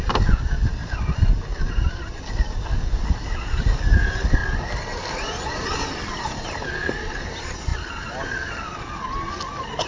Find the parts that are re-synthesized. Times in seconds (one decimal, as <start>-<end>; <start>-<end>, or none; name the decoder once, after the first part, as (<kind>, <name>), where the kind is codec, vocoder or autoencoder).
1.5-2.6 (vocoder, BigVGAN v2)